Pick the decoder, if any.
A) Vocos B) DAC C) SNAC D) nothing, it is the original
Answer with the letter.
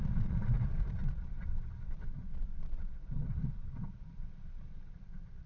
A